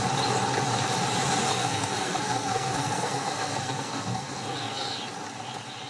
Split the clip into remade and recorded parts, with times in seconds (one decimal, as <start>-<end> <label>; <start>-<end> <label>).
0.0-1.5 recorded; 1.5-5.0 remade; 5.0-5.9 recorded